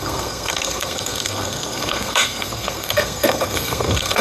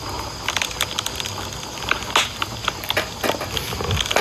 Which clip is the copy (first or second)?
first